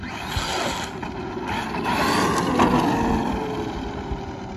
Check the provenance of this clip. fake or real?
real